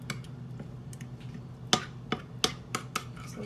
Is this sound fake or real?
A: real